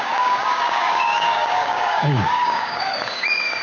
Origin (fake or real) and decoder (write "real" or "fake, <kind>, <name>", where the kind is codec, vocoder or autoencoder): fake, codec, DAC